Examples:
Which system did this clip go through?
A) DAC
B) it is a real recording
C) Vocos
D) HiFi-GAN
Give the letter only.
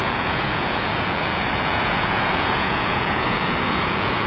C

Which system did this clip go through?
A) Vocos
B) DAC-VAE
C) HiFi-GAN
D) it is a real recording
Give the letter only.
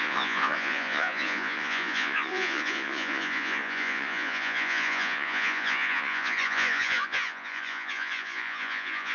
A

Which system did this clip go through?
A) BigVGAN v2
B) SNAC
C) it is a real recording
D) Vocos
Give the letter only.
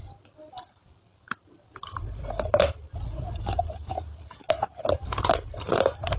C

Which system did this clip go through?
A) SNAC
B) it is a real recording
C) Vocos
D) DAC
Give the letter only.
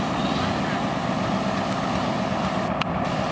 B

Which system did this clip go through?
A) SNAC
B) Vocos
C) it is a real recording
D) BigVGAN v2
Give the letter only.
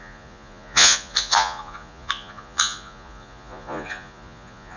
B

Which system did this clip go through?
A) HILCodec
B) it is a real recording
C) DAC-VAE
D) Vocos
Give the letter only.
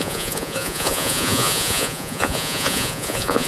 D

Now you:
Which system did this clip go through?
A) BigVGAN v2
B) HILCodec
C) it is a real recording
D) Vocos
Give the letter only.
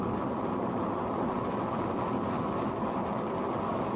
C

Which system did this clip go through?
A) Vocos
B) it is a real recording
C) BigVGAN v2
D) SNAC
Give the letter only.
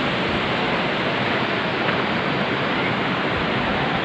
B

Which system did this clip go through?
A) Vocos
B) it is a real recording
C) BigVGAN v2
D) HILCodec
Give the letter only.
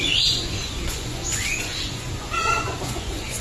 A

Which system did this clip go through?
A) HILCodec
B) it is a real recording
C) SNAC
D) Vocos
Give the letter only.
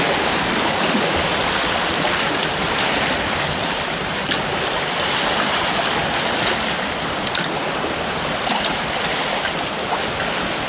B